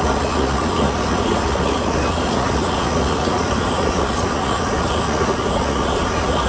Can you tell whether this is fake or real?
fake